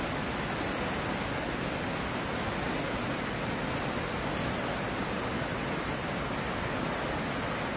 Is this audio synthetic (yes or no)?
no